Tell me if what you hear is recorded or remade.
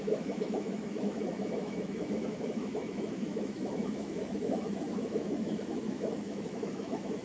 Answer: remade